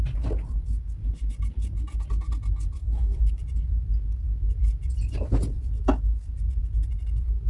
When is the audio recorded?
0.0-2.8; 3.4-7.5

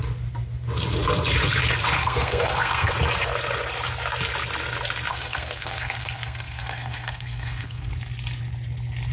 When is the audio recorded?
0.0-2.0; 2.9-5.1; 7.9-9.1